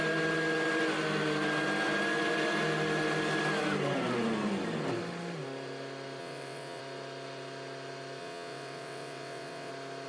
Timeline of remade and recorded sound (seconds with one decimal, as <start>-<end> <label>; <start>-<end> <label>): 0.0-6.2 recorded; 6.2-6.8 remade; 6.8-8.2 recorded; 8.2-9.7 remade; 9.7-10.1 recorded